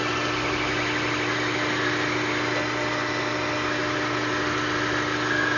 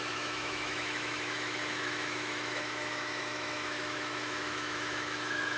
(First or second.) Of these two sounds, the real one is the first